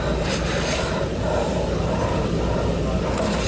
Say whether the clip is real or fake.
real